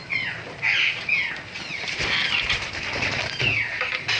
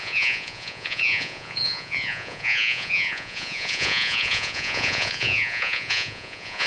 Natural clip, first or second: first